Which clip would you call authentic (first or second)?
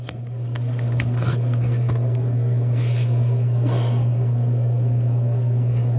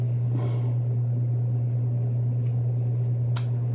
second